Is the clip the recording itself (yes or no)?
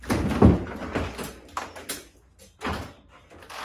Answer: yes